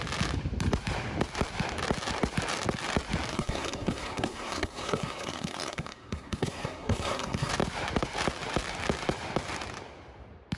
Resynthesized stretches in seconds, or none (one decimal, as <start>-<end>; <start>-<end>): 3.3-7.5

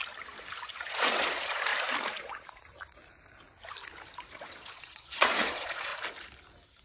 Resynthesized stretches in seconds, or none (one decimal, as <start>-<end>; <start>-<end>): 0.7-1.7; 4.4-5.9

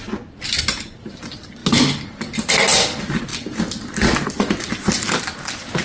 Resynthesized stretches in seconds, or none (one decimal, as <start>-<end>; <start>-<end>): none

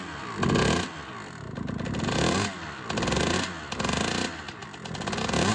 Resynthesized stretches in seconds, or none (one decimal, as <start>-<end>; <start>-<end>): none

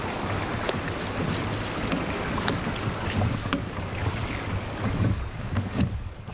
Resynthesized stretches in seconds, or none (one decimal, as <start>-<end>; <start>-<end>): 0.0-0.4; 1.8-6.3